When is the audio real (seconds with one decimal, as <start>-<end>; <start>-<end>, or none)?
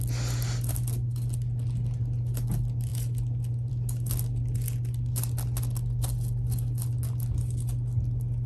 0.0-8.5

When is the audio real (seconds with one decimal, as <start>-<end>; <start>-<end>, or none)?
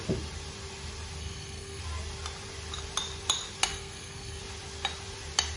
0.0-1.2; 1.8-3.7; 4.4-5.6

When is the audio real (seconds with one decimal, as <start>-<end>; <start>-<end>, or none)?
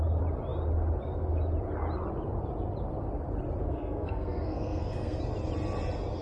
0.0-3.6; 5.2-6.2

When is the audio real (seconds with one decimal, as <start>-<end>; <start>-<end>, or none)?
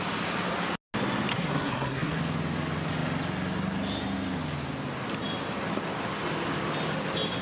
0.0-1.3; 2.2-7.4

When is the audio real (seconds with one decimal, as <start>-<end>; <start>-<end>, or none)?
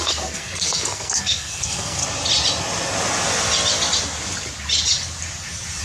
2.0-5.8